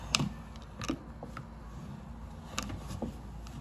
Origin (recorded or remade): recorded